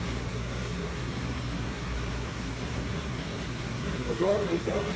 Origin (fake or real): fake